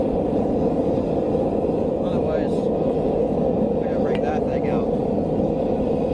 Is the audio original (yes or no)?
yes